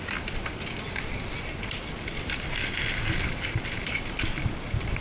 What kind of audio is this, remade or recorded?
recorded